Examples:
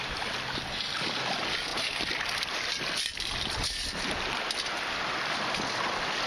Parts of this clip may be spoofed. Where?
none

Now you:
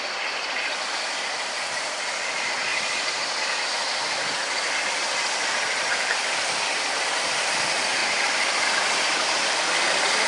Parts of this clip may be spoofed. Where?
none

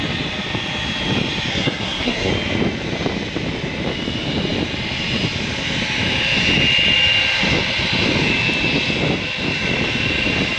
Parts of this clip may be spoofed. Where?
1.5-2.3 (codec, SNAC)